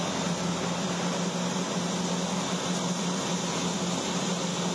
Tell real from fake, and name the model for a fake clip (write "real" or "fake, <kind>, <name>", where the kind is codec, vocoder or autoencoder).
real